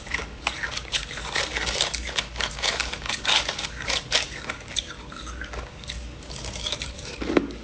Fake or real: fake